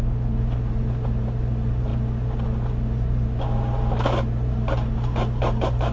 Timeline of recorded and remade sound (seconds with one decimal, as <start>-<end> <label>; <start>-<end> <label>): 0.0-5.9 recorded